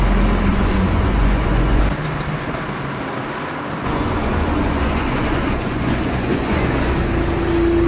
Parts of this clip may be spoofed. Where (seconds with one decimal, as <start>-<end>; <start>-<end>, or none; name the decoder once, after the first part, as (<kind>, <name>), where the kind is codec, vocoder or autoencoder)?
0.5-1.8 (vocoder, Vocos); 3.8-7.1